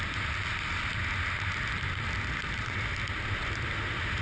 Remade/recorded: recorded